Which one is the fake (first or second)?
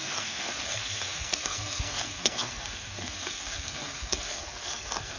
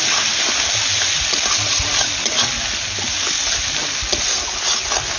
first